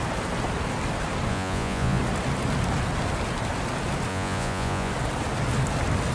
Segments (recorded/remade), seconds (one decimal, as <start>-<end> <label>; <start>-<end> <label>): 0.0-1.3 recorded; 1.3-2.0 remade; 2.0-4.1 recorded; 4.1-4.9 remade; 4.9-6.1 recorded